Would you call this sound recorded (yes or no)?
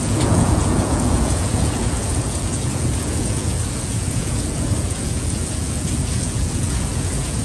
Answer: no